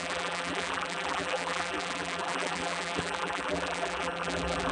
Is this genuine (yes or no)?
no